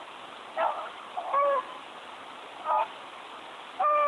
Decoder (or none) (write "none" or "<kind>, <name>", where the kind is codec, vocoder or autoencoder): none